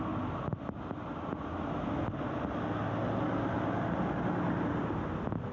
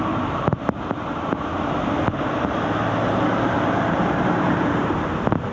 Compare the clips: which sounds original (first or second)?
first